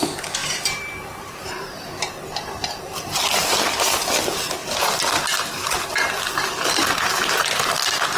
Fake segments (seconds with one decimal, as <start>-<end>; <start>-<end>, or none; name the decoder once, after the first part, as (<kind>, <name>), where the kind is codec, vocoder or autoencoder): 0.4-2.1 (vocoder, BigVGAN v2)